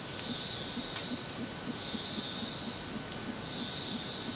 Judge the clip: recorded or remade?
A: recorded